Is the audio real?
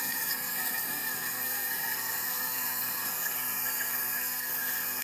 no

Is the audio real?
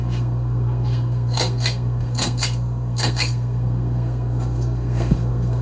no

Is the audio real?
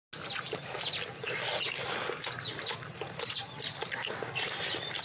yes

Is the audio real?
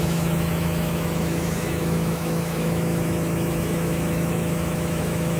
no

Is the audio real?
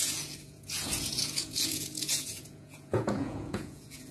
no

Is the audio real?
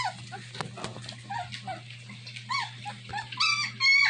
yes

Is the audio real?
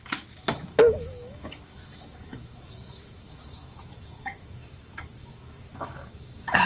no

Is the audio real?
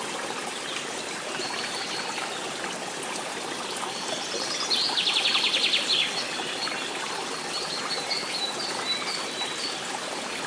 yes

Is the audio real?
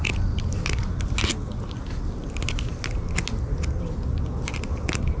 yes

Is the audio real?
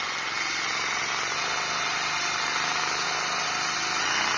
yes